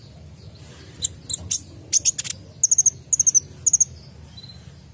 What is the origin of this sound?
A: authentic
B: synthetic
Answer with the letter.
A